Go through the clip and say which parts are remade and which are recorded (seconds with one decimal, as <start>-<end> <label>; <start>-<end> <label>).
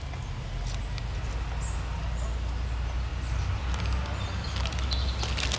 0.0-5.6 recorded